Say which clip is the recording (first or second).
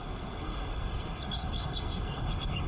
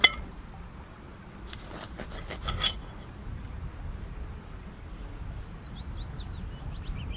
second